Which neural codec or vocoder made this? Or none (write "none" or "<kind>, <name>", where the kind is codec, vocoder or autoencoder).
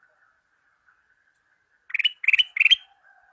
none